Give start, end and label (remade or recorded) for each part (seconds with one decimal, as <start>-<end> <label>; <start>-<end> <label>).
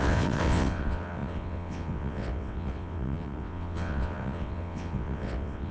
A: 0.0-5.7 remade